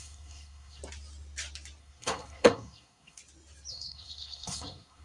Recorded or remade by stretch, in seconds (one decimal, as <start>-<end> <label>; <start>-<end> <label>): 0.0-0.8 remade; 0.8-1.8 recorded; 1.8-3.2 remade; 3.2-3.7 recorded; 3.7-5.0 remade